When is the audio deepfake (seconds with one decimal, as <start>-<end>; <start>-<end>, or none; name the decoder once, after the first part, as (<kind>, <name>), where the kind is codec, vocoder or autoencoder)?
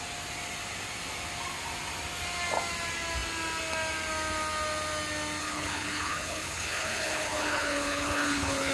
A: 5.4-8.7 (codec, HILCodec)